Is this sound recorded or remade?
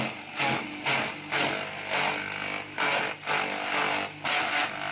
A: recorded